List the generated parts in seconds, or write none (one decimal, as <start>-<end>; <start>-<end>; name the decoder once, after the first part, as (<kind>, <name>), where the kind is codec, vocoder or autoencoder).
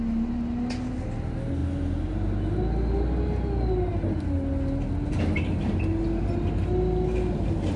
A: none